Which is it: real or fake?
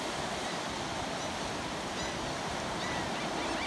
real